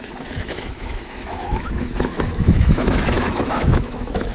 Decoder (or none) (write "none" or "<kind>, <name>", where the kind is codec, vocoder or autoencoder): autoencoder, DAC-VAE